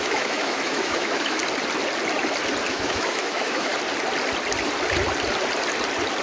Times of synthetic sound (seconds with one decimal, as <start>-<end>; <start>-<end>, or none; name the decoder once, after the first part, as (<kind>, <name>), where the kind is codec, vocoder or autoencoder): 0.0-1.4 (autoencoder, DAC-VAE); 2.7-3.7